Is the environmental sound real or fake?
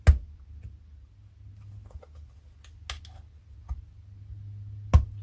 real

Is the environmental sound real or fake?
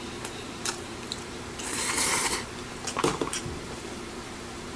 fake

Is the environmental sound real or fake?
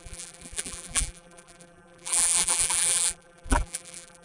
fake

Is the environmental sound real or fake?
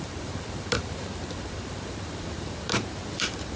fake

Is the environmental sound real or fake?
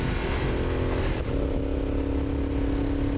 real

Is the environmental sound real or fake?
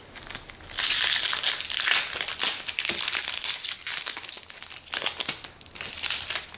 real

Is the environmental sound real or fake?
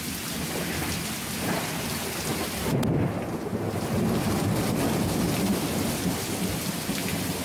real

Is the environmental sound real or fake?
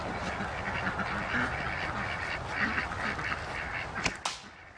real